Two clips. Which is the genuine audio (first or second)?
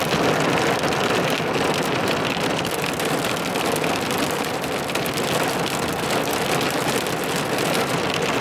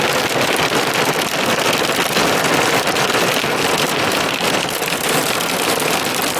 first